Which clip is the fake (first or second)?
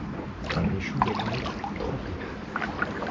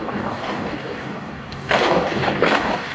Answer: second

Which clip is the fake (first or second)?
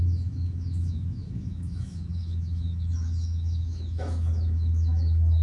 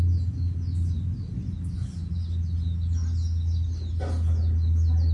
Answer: first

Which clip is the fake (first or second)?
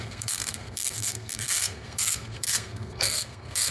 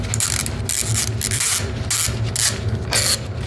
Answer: first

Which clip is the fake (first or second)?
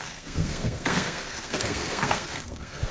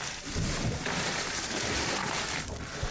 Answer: first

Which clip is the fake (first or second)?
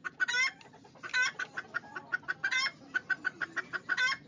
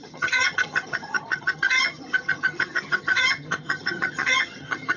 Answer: second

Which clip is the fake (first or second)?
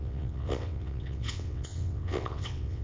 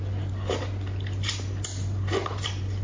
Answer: first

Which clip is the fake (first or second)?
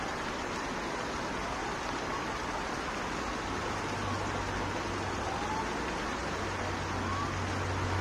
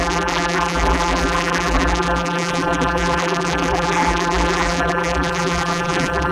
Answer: second